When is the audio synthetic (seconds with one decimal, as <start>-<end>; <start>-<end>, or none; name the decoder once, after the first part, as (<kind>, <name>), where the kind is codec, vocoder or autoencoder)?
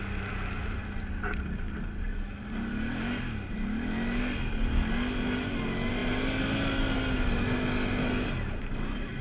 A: none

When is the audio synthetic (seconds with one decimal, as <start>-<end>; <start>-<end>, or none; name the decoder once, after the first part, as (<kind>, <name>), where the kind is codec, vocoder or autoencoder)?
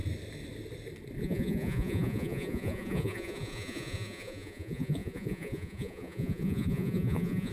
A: 1.2-7.5 (vocoder, Vocos)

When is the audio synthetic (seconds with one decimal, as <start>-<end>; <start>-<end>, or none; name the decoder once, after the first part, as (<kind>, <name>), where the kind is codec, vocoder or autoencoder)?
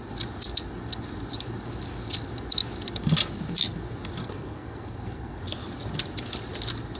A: 4.2-5.4 (codec, SNAC)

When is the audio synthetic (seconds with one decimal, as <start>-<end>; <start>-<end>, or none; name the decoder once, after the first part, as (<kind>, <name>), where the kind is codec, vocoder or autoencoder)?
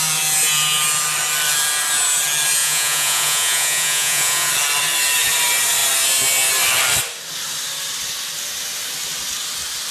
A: 2.6-4.5 (vocoder, Vocos)